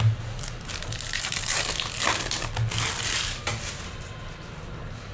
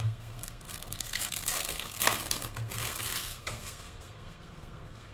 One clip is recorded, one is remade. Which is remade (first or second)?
second